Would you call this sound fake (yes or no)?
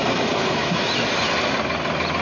no